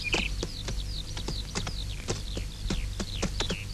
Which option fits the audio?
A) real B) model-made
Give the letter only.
A